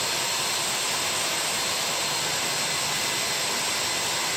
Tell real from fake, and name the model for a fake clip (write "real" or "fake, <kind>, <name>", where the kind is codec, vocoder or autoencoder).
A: real